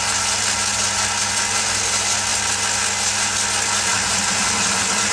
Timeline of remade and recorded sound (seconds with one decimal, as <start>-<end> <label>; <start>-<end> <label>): 0.0-5.1 recorded